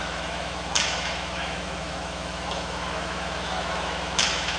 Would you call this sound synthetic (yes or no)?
yes